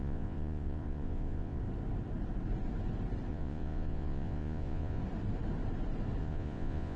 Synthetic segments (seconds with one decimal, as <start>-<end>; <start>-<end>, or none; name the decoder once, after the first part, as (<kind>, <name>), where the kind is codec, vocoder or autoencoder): 0.0-1.6 (vocoder, Vocos); 3.3-5.0; 6.2-7.0

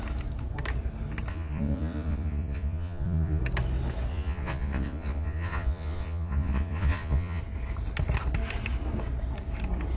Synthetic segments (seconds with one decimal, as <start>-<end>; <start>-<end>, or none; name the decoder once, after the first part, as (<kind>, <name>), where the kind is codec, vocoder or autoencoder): 1.3-3.4 (vocoder, Vocos); 4.1-7.4